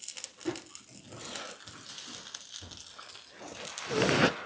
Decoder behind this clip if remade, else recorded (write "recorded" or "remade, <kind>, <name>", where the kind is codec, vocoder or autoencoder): recorded